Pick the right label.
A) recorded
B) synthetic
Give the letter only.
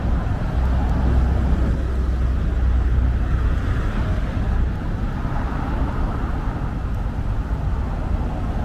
A